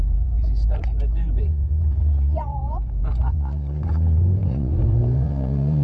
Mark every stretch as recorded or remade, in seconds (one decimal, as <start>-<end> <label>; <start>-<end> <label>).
0.0-5.8 remade